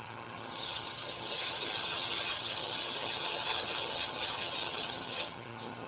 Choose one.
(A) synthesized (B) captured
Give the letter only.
A